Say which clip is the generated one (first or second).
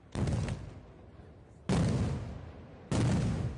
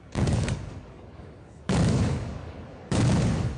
second